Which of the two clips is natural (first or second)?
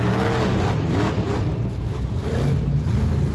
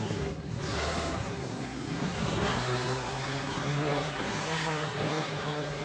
first